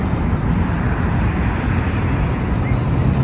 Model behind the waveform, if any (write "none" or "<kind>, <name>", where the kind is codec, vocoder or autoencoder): none